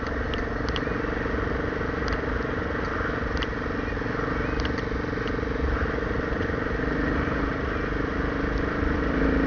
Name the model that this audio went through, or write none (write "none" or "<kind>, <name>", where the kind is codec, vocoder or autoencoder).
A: none